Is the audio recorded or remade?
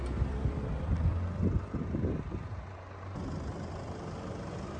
recorded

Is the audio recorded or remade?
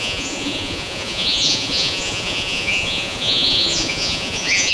remade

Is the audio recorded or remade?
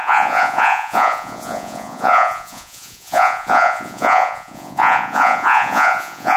remade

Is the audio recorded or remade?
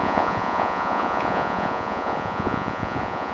remade